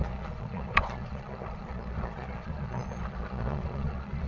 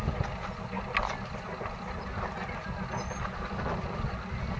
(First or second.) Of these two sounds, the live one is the second